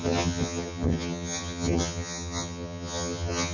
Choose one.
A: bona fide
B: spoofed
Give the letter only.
B